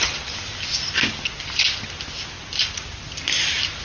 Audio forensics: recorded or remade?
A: recorded